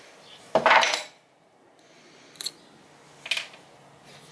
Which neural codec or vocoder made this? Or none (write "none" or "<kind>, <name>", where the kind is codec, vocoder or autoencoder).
none